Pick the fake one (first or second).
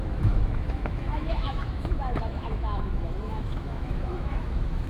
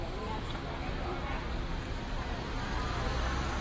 first